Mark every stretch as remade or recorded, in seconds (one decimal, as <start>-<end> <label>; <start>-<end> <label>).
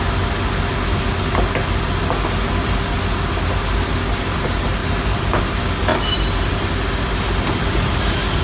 0.0-4.8 recorded; 4.8-5.4 remade; 5.4-5.9 recorded; 5.9-6.6 remade; 6.6-8.4 recorded